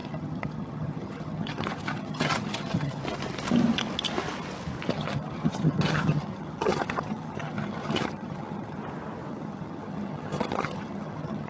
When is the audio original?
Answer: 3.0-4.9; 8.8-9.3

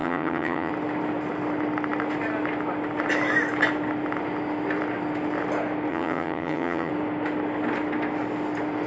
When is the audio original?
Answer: 0.7-5.9; 6.9-8.9

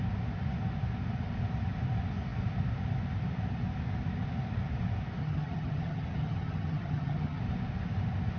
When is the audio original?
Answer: 0.0-5.2; 7.4-8.4